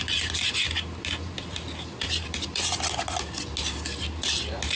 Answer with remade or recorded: recorded